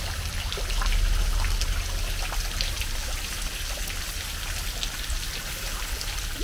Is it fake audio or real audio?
real